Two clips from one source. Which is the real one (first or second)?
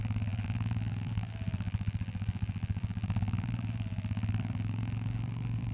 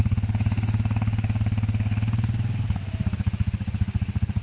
second